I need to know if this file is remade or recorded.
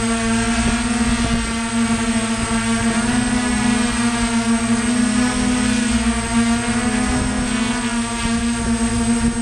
recorded